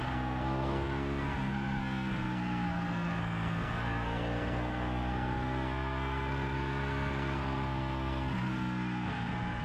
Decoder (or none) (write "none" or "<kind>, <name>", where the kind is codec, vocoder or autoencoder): codec, SNAC